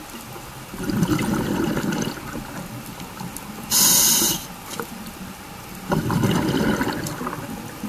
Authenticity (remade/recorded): recorded